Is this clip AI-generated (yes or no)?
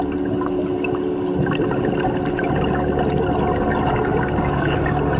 no